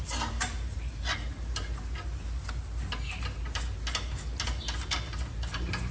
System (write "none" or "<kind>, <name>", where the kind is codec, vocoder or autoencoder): none